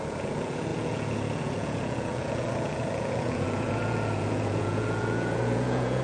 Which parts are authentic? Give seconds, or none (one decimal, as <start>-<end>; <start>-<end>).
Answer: none